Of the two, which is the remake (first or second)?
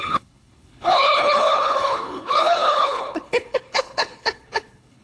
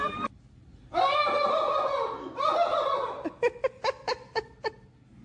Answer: first